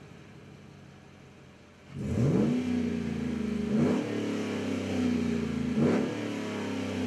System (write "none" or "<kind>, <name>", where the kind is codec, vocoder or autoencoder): none